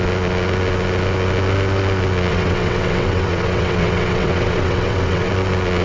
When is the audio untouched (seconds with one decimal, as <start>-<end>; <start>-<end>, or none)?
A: 0.0-2.3; 5.3-5.8

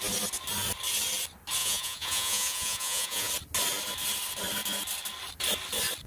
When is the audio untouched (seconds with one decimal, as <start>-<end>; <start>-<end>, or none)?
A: 0.0-1.6; 3.3-6.1

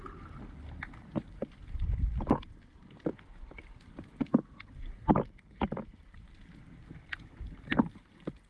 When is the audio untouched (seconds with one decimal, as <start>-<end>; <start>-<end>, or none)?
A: 0.0-8.5

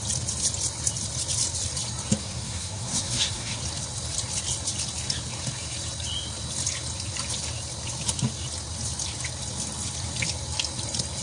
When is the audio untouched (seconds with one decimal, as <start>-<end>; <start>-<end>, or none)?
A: 0.0-2.2; 3.6-11.2